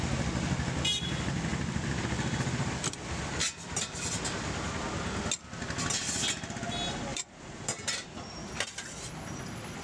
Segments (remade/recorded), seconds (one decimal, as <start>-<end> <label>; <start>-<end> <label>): 0.0-7.1 recorded; 7.1-8.5 remade; 8.5-9.8 recorded